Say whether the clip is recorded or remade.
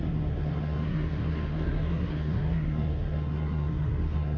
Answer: remade